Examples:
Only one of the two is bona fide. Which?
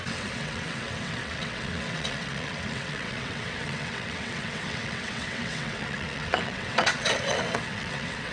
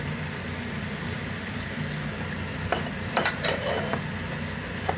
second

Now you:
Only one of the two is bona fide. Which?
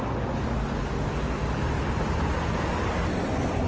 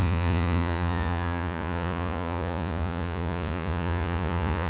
first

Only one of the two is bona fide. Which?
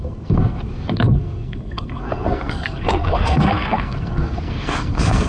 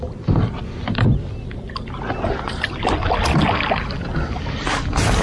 second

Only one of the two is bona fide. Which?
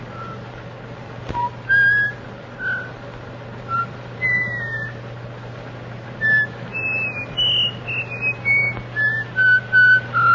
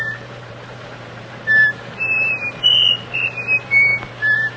first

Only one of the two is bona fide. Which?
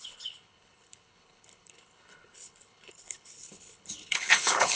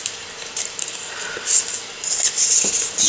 second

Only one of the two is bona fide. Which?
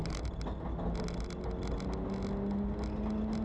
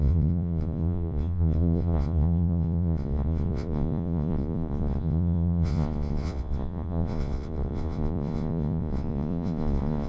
first